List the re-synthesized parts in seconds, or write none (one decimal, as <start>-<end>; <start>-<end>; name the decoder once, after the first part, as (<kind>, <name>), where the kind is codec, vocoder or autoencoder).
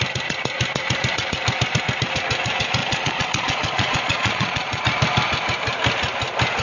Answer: 2.8-4.8 (vocoder, Vocos)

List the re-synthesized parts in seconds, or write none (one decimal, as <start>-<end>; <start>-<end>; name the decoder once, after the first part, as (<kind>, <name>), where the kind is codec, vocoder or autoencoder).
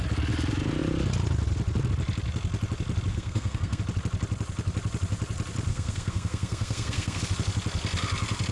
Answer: 3.1-3.8 (codec, SNAC); 5.7-7.2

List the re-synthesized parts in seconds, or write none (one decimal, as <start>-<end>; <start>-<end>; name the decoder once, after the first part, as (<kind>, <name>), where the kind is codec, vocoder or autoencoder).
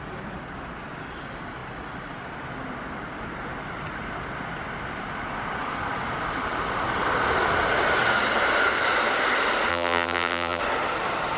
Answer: 9.7-10.6 (vocoder, BigVGAN v2)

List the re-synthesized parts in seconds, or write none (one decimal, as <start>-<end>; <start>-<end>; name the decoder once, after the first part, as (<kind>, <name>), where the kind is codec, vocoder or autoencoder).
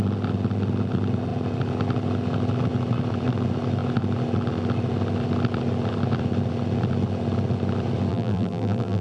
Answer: 8.1-9.0 (vocoder, BigVGAN v2)